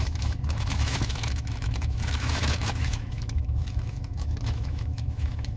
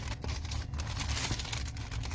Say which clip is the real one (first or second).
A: second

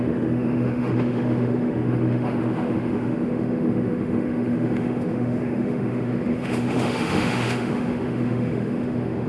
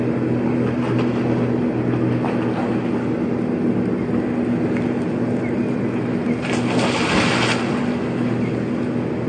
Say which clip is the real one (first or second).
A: second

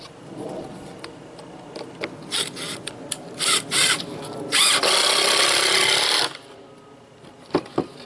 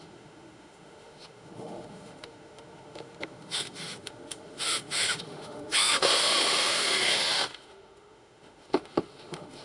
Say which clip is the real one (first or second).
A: first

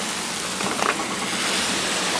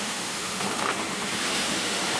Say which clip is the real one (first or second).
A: first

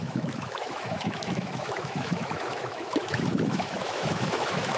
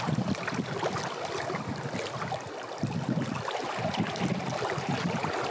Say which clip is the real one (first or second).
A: second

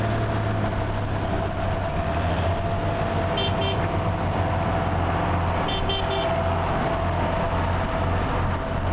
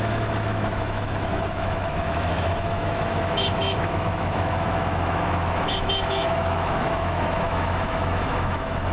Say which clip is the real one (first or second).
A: first